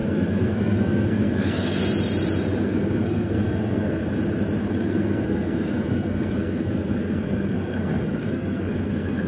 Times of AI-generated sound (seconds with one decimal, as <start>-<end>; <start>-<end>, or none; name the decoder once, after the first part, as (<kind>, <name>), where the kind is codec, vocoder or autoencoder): 0.0-1.8 (codec, SNAC); 2.6-4.0; 4.6-9.3